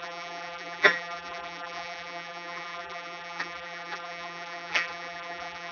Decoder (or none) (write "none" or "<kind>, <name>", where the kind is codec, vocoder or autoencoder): vocoder, BigVGAN v2